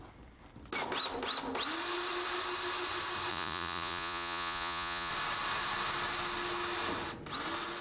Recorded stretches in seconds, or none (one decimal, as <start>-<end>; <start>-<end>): 0.0-3.3; 5.1-7.8